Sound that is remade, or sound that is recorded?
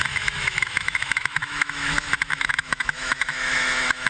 remade